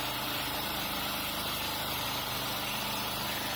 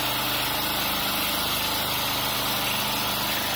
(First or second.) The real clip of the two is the second